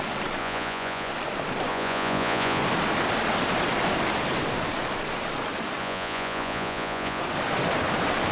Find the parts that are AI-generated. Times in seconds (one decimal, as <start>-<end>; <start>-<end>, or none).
0.4-1.1; 1.7-2.6; 5.8-7.2